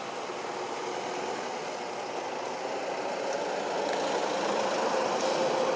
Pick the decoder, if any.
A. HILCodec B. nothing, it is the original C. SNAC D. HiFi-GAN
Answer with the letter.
B